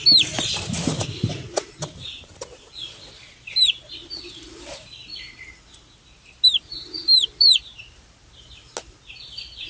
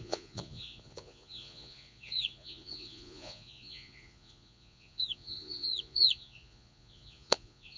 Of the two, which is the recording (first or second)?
first